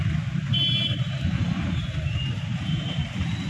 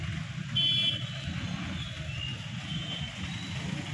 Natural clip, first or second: second